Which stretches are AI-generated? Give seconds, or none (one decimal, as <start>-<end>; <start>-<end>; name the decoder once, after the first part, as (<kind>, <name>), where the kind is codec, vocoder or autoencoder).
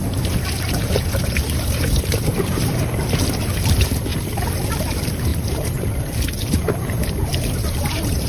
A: 0.7-4.1 (vocoder, BigVGAN v2); 4.8-8.3